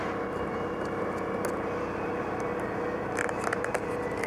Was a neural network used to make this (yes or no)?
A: no